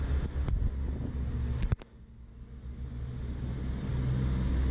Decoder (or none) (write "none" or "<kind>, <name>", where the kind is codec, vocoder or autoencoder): none